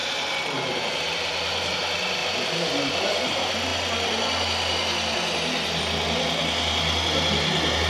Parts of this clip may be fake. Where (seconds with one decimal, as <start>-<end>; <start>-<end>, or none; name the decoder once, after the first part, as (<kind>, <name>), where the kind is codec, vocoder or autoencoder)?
0.0-1.7 (vocoder, BigVGAN v2); 2.2-3.3